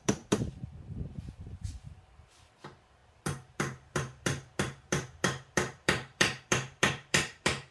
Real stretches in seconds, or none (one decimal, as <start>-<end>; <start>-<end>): none